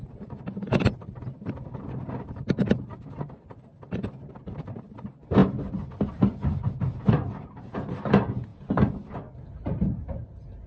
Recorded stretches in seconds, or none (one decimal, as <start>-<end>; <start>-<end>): none